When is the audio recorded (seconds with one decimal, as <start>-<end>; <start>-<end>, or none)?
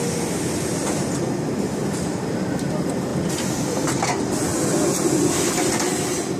0.0-6.4